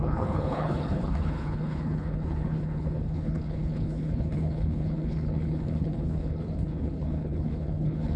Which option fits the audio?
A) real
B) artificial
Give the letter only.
B